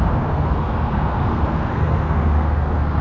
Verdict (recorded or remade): remade